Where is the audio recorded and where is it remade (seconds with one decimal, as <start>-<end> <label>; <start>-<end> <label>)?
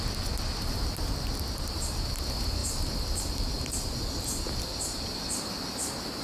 0.0-6.2 recorded